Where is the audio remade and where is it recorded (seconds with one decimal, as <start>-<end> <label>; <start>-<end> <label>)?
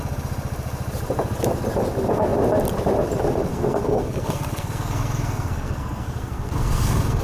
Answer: 0.0-3.5 recorded; 3.5-7.2 remade